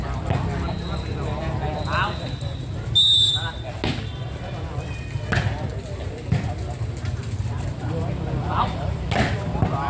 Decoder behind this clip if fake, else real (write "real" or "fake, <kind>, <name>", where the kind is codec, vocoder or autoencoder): real